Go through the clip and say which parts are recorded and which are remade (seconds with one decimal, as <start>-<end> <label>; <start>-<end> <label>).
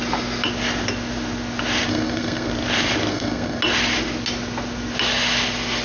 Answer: 0.0-1.9 recorded; 1.9-2.5 remade; 2.5-3.1 recorded; 3.1-3.6 remade; 3.6-5.8 recorded